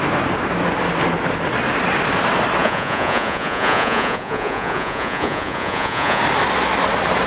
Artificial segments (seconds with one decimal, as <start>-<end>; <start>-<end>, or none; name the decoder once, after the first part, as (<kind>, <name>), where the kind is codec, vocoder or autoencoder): 2.6-6.2 (vocoder, Vocos)